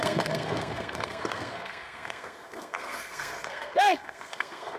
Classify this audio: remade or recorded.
remade